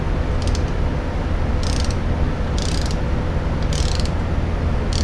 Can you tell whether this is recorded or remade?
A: recorded